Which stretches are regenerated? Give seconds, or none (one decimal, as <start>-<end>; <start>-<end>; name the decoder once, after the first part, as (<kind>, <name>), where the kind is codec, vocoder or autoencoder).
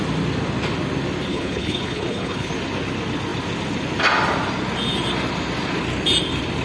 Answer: 1.3-2.5 (codec, HILCodec)